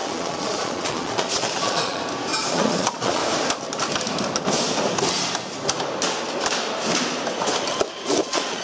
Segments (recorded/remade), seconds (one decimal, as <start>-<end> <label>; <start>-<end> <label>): 0.0-2.0 remade; 2.0-2.5 recorded; 2.5-3.2 remade; 3.2-7.9 recorded; 7.9-8.6 remade